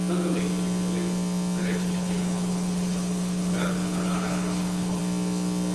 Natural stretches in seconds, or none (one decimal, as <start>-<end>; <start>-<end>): 0.0-1.6; 5.0-5.7